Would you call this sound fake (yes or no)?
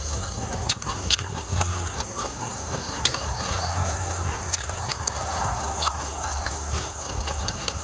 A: yes